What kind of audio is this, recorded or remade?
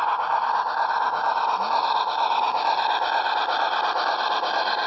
recorded